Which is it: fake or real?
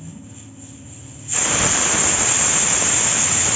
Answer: real